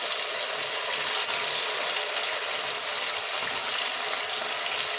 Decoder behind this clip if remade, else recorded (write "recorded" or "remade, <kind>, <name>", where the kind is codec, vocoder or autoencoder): recorded